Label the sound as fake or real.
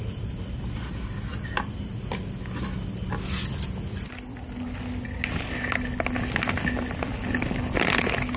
real